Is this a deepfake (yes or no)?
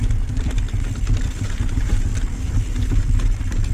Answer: no